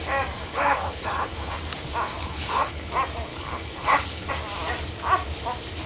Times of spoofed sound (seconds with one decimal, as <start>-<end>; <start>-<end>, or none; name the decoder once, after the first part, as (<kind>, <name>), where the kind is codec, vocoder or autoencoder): 0.4-1.5 (codec, HILCodec); 2.2-2.9; 3.3-4.3